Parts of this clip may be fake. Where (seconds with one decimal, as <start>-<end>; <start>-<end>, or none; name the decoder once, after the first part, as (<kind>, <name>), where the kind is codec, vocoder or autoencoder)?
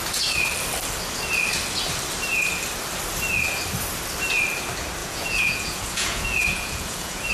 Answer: 5.0-7.3 (vocoder, Vocos)